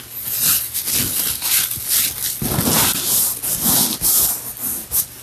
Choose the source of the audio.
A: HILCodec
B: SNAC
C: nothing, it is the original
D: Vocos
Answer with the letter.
C